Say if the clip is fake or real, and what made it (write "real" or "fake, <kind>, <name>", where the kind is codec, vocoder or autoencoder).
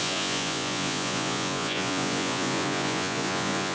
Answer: fake, vocoder, Vocos